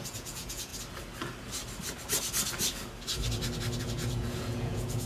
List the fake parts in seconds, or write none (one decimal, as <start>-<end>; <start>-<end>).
0.0-0.7; 3.8-5.1